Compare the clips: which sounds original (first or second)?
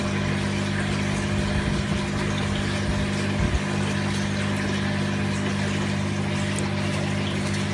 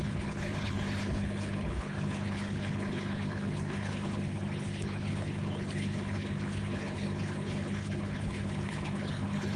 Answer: first